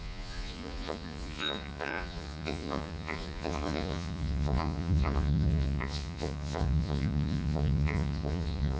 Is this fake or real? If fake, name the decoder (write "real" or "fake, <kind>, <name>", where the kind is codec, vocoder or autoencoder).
fake, vocoder, Vocos